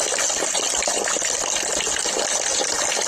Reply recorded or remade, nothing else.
recorded